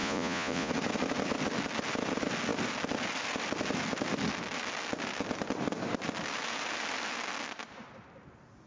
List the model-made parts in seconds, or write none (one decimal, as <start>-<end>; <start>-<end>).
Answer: 0.0-0.7